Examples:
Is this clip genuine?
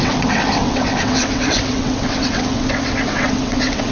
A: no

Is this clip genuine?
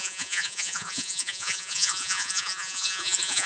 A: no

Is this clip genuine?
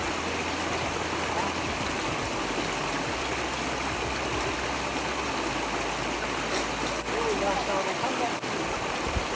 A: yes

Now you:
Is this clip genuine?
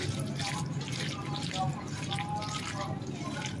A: yes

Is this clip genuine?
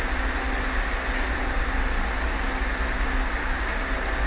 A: yes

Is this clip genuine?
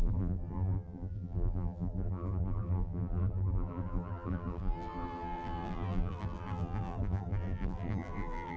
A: no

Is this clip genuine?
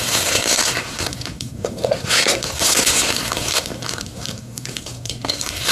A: no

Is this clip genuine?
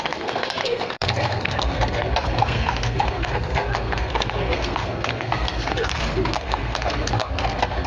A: no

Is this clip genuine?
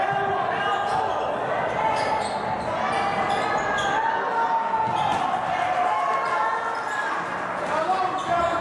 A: yes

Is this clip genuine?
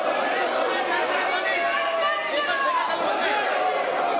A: yes